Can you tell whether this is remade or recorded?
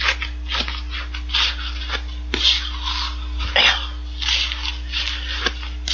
recorded